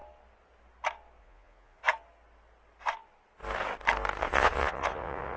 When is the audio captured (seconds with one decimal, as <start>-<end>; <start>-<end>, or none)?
0.0-1.2; 1.8-4.2